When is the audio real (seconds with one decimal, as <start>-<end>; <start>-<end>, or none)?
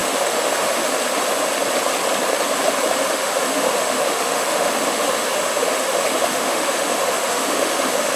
0.8-3.0